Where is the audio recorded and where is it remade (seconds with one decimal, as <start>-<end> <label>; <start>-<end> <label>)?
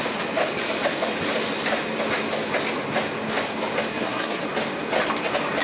0.0-3.9 recorded; 3.9-4.4 remade; 4.4-5.6 recorded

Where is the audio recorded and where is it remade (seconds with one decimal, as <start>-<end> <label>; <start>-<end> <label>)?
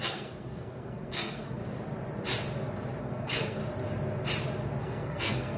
0.0-1.6 remade; 1.6-3.0 recorded; 3.0-3.6 remade; 3.6-4.8 recorded; 4.8-5.6 remade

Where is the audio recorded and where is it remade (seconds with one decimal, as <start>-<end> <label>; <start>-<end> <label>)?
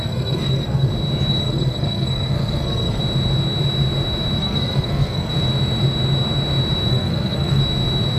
0.0-0.9 remade; 0.9-1.4 recorded; 1.4-3.0 remade; 3.0-4.4 recorded; 4.4-5.3 remade; 5.3-6.9 recorded; 6.9-7.6 remade; 7.6-8.2 recorded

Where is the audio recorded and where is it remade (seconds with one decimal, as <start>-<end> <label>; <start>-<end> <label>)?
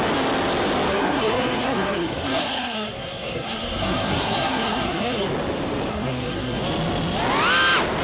0.0-0.9 recorded; 0.9-5.3 remade; 5.3-5.9 recorded; 5.9-6.6 remade; 6.6-8.0 recorded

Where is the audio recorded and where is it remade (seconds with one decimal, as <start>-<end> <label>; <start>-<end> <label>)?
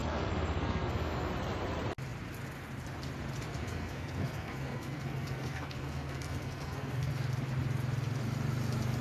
0.0-1.3 remade; 1.3-3.5 recorded; 3.5-7.1 remade; 7.1-9.0 recorded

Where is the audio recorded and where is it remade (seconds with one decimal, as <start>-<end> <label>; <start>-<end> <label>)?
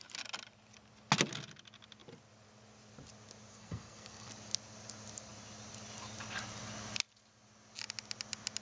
0.0-3.5 recorded; 3.5-4.3 remade; 4.3-8.6 recorded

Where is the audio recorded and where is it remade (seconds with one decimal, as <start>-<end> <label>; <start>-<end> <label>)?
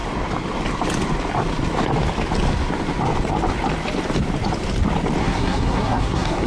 0.0-5.2 recorded; 5.2-6.5 remade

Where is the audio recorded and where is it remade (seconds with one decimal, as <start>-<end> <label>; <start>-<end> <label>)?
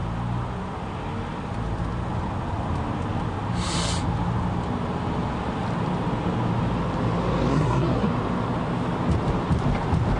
0.0-7.5 recorded; 7.5-8.1 remade; 8.1-10.2 recorded